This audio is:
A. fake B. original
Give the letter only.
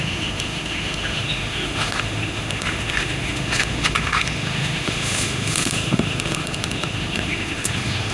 A